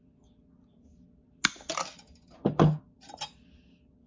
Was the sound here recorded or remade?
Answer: recorded